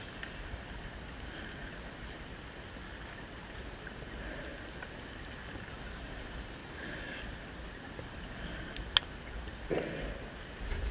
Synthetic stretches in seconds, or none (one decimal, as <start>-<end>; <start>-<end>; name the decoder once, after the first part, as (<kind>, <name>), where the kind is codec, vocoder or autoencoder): 6.6-7.2 (codec, DAC)